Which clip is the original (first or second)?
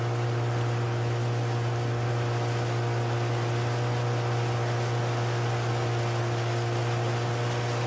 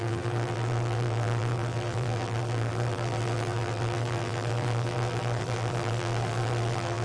first